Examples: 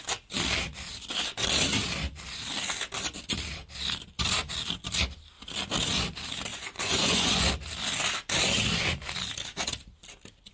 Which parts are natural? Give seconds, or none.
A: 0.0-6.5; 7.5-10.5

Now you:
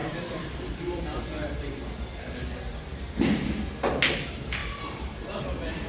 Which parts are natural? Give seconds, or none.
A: 1.0-5.9

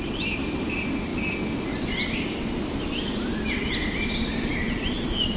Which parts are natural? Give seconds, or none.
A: 0.0-5.4

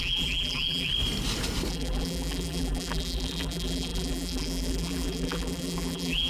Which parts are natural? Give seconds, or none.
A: 0.9-1.7

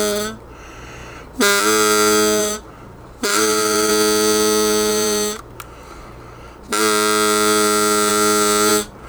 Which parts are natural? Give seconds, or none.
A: 0.0-2.4; 3.9-4.9; 5.4-9.1

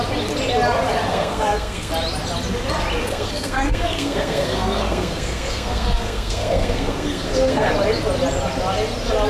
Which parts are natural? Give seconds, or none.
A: 0.0-1.1; 1.9-3.0; 7.7-9.3